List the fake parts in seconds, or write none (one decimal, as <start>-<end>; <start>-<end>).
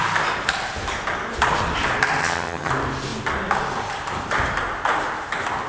2.2-2.7